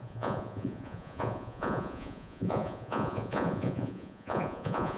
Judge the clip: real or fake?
fake